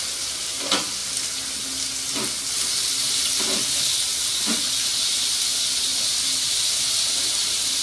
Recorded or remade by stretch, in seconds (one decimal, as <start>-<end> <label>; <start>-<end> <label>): 0.0-7.8 recorded